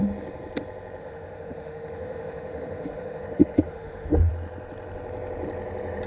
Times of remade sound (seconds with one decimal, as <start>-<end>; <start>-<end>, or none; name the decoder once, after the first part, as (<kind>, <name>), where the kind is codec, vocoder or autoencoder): 1.0-4.3 (autoencoder, DAC-VAE)